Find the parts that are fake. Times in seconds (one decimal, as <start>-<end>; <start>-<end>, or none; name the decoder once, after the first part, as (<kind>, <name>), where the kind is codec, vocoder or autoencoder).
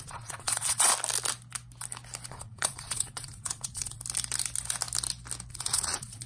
0.0-0.9 (vocoder, Vocos); 2.3-4.0; 5.5-6.3